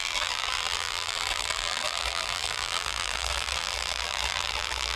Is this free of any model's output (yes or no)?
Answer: no